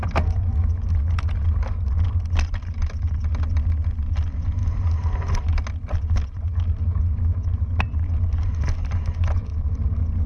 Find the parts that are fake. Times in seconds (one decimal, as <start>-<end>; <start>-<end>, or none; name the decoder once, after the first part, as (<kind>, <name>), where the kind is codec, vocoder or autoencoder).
none